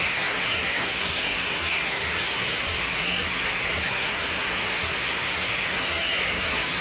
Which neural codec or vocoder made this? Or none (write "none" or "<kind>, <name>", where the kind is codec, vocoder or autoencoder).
codec, SNAC